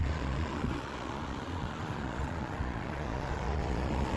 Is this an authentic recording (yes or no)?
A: no